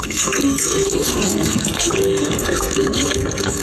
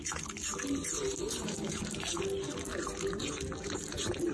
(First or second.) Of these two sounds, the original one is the second